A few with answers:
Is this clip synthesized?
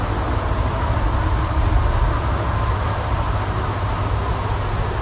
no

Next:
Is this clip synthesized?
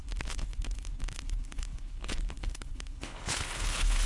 yes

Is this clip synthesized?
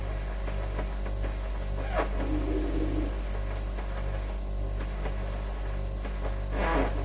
no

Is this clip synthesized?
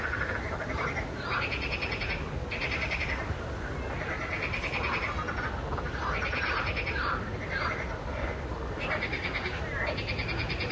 no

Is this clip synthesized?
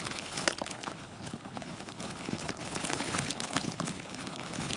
yes